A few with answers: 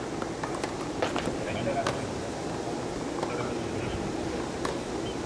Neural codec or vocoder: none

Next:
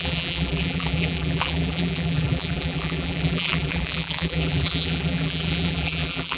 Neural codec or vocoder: vocoder, BigVGAN v2